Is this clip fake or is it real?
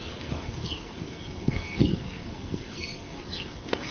fake